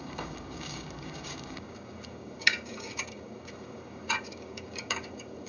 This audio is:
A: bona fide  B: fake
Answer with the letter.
B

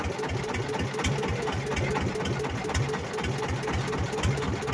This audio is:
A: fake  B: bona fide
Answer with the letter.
B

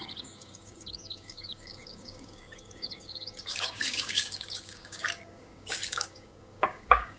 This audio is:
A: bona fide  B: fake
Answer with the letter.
B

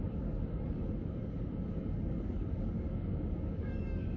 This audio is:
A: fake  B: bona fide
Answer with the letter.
A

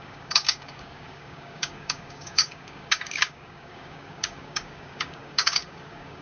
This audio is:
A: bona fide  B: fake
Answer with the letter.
B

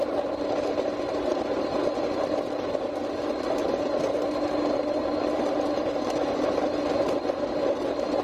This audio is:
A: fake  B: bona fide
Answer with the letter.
B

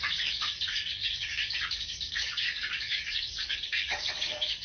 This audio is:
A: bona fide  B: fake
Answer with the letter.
B